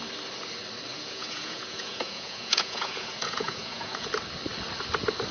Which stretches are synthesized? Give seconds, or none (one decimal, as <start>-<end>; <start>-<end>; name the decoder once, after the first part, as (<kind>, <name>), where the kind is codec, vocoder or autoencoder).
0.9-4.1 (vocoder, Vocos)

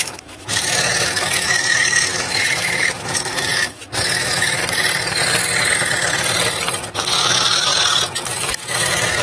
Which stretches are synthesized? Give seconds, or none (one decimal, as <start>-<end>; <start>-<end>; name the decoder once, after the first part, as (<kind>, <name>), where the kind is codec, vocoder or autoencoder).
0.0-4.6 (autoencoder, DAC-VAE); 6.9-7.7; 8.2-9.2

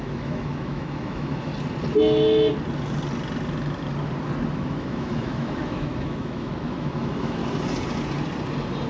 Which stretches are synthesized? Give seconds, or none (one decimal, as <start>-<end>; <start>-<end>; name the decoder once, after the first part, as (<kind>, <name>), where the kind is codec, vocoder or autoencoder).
0.0-1.5 (autoencoder, DAC-VAE); 4.5-7.4

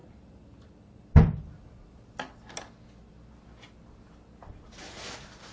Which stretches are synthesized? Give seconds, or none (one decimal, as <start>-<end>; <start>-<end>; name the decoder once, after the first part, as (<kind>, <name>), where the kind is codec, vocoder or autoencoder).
none

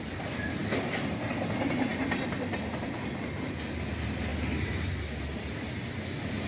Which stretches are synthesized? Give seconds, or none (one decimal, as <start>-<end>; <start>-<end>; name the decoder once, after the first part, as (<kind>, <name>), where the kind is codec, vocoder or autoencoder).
none